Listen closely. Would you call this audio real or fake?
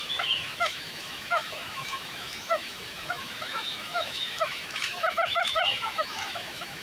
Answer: fake